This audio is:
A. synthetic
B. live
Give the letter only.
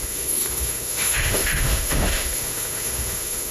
A